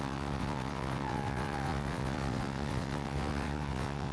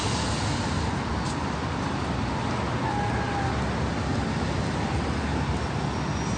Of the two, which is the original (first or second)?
second